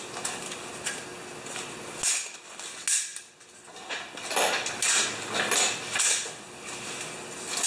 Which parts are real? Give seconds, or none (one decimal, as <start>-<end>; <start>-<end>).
0.0-7.7

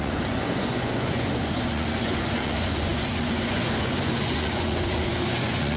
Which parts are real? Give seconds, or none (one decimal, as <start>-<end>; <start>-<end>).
none

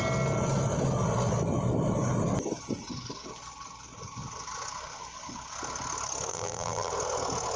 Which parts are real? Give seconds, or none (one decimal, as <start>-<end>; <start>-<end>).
0.0-6.3; 6.9-7.6

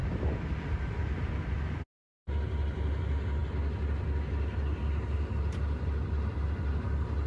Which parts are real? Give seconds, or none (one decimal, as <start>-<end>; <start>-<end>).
0.0-7.3

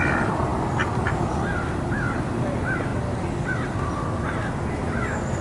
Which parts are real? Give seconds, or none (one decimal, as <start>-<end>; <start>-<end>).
0.5-1.9; 2.9-5.4

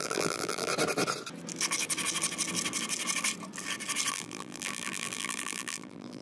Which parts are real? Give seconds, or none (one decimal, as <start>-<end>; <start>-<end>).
0.7-4.1